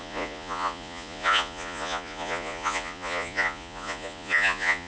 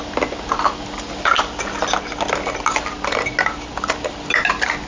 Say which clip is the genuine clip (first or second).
second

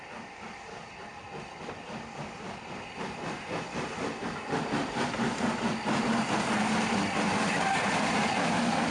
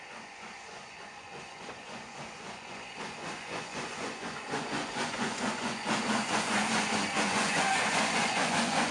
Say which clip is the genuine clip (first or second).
first